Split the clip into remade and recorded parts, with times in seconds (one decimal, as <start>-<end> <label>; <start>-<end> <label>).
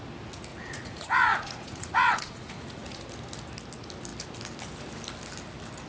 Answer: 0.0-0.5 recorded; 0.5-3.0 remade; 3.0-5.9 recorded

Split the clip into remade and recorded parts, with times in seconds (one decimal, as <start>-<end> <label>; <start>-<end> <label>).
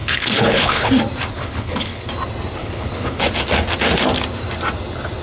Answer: 0.0-0.9 remade; 0.9-1.3 recorded; 1.3-2.1 remade; 2.1-2.6 recorded; 2.6-3.2 remade; 3.2-5.2 recorded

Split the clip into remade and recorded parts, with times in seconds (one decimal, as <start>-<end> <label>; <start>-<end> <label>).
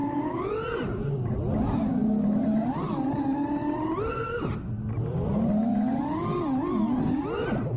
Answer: 0.0-7.8 recorded